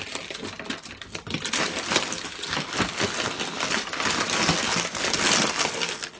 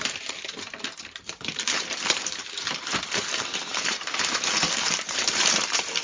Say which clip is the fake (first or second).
second